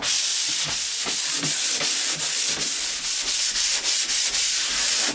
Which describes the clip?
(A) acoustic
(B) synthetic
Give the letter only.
A